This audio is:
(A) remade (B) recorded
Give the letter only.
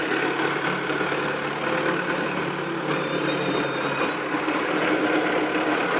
B